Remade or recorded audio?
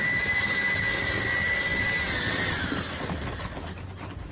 recorded